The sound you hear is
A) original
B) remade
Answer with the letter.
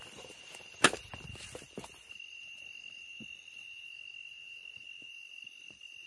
A